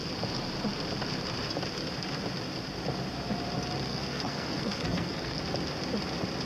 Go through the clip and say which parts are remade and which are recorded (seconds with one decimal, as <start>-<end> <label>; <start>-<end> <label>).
0.0-3.9 recorded; 3.9-5.4 remade; 5.4-6.5 recorded